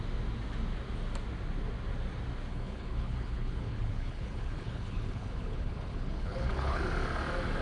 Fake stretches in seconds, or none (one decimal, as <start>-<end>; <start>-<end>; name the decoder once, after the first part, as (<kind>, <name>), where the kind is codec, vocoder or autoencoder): 2.5-6.8 (codec, HILCodec)